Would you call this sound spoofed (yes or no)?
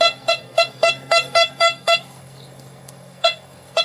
yes